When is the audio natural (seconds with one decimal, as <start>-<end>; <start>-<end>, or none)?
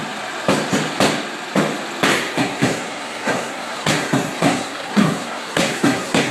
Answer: 0.0-2.1